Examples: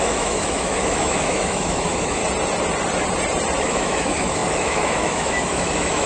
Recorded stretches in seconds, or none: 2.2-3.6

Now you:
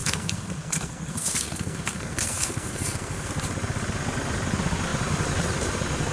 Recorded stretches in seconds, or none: 3.3-6.1